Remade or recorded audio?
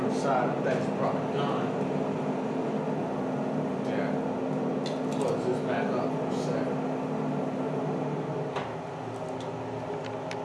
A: recorded